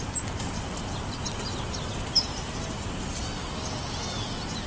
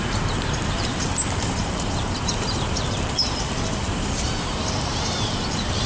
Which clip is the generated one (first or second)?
second